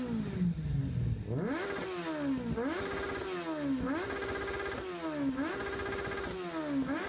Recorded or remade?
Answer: recorded